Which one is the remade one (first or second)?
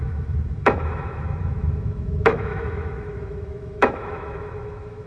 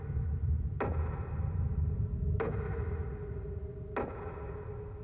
first